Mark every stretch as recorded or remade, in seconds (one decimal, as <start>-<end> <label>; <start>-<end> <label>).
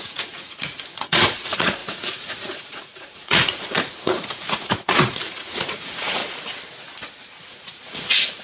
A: 0.0-6.2 remade; 6.2-7.4 recorded; 7.4-8.4 remade